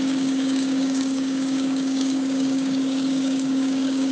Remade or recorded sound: remade